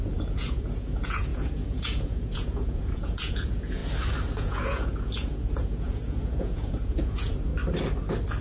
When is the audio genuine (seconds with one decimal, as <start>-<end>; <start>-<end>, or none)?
3.8-4.3; 7.5-8.4